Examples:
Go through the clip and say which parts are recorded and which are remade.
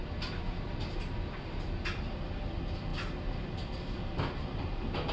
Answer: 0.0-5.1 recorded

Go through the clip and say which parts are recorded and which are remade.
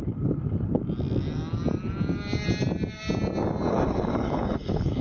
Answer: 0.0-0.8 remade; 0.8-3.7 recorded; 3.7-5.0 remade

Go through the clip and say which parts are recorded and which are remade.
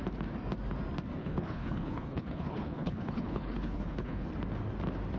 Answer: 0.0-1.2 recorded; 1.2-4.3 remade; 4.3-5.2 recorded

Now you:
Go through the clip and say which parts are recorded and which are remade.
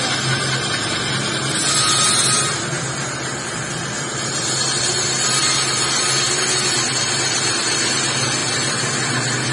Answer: 0.0-9.5 recorded